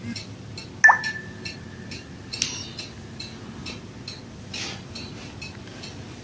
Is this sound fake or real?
real